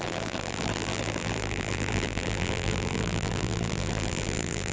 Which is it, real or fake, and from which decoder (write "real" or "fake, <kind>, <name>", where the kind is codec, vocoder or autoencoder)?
fake, vocoder, BigVGAN v2